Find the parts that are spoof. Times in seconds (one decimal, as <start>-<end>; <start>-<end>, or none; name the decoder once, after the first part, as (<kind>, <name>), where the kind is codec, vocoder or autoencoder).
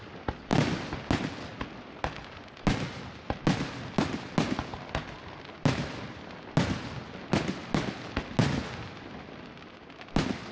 none